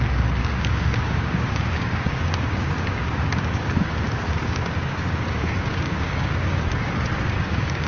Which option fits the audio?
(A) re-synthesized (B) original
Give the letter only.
A